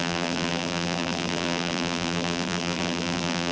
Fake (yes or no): yes